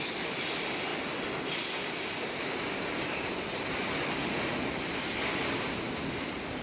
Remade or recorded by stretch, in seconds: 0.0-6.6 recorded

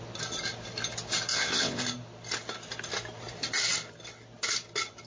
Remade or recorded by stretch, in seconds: 0.0-1.3 recorded; 1.3-1.8 remade; 1.8-5.1 recorded

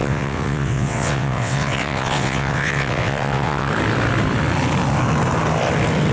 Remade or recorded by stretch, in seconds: 0.0-3.7 remade; 3.7-6.1 recorded

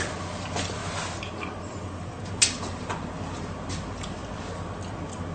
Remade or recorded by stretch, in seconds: 0.0-5.3 recorded